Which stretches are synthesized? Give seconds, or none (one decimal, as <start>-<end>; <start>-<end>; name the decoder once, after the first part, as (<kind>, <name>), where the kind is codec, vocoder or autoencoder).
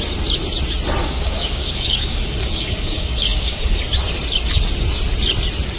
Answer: 1.0-3.8 (codec, DAC)